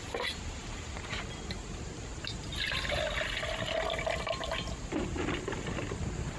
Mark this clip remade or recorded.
recorded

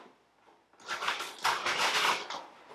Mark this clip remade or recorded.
recorded